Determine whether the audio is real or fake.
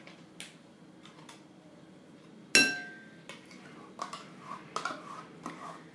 real